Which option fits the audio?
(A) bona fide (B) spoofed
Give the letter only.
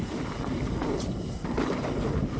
A